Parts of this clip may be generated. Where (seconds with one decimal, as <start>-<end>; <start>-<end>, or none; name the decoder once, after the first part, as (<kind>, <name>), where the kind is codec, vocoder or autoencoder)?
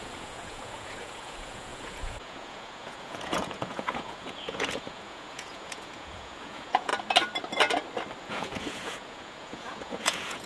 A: 0.0-6.9 (vocoder, Vocos); 8.2-10.5